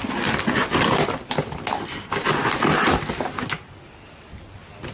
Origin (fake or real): real